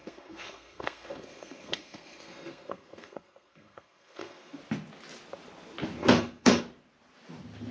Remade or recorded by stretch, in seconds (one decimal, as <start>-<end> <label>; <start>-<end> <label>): 0.0-4.6 remade; 4.6-6.0 recorded; 6.0-6.6 remade; 6.6-7.7 recorded